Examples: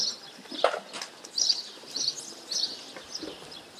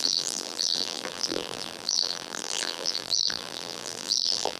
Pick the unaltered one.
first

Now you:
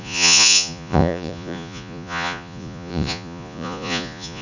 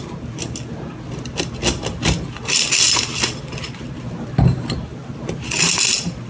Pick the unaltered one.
second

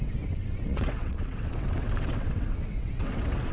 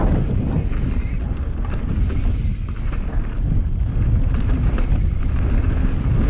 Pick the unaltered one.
second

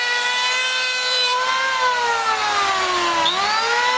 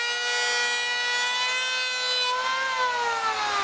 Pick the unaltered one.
second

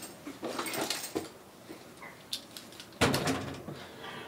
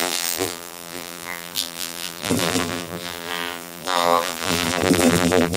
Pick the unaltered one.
first